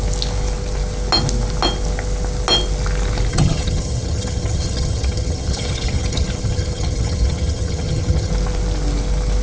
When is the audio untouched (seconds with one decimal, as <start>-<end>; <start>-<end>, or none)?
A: 0.0-3.3; 8.3-9.4